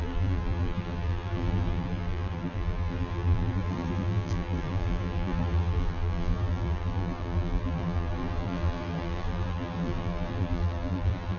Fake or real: fake